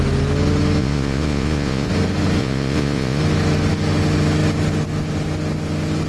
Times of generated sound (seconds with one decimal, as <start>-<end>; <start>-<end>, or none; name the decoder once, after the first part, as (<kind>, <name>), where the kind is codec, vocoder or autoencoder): 0.8-1.9 (vocoder, Vocos); 2.4-3.2